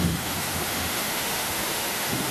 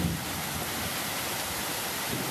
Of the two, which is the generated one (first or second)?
first